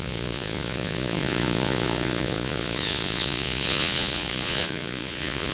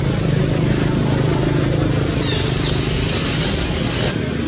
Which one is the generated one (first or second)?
first